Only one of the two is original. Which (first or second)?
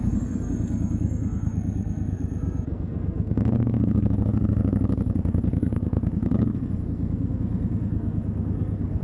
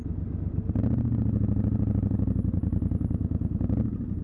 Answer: second